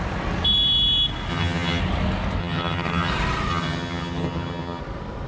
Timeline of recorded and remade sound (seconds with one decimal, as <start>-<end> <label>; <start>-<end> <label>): 0.0-1.3 recorded; 1.3-1.8 remade; 1.8-2.4 recorded; 2.4-3.1 remade; 3.1-3.5 recorded; 3.5-4.8 remade; 4.8-5.3 recorded